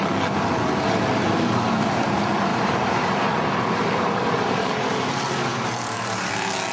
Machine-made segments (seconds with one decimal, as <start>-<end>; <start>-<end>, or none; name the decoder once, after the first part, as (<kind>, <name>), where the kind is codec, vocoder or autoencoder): 2.5-4.7 (vocoder, BigVGAN v2); 5.5-6.3